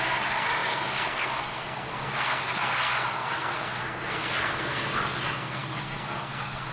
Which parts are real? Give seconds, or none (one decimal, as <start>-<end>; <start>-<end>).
none